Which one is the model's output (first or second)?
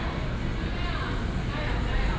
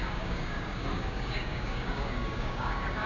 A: second